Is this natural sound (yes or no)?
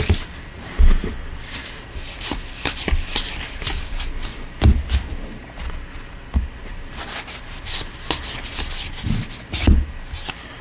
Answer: yes